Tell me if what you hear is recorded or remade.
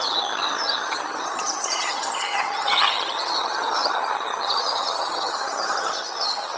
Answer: remade